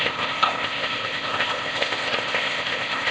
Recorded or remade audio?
remade